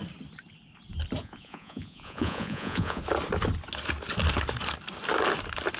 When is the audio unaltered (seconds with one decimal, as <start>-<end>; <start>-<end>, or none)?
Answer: 0.0-1.2; 3.0-5.8